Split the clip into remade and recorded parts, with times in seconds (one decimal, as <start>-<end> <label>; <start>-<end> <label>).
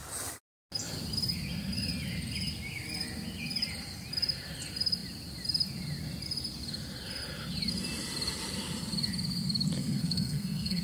0.0-9.8 recorded; 9.8-10.8 remade